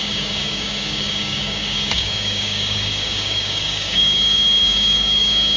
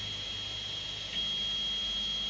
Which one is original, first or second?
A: second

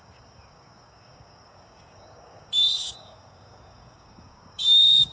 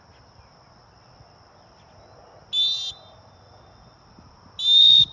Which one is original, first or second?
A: second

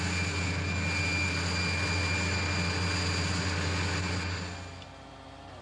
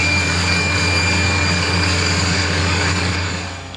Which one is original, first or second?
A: first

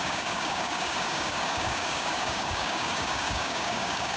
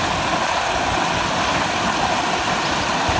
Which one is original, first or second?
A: second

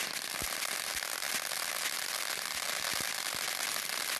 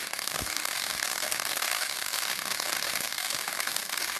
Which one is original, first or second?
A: first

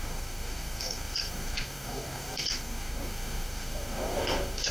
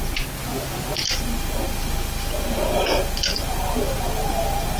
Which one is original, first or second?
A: second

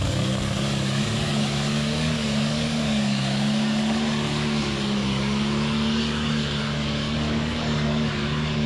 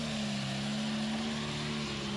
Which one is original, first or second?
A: second